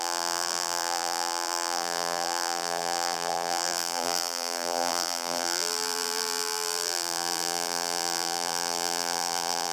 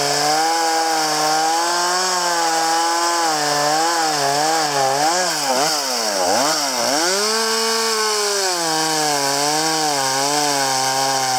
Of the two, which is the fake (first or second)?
first